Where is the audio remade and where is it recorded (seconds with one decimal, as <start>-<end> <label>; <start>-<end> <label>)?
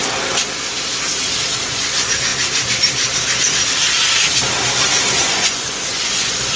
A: 0.0-1.7 recorded; 1.7-2.3 remade; 2.3-5.1 recorded; 5.1-6.6 remade